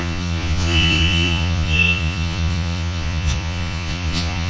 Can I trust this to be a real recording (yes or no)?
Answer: no